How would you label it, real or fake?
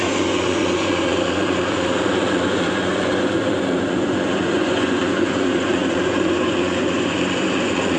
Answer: fake